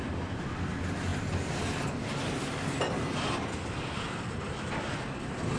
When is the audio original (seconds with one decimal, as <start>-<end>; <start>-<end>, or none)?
0.0-5.6